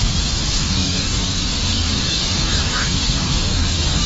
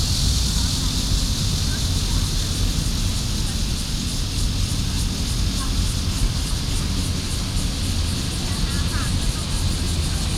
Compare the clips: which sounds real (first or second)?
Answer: second